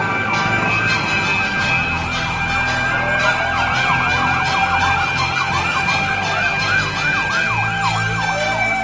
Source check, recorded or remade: recorded